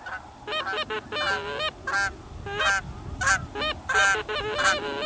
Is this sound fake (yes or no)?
no